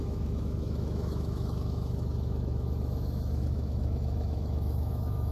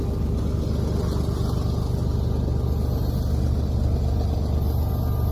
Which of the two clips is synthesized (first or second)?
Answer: first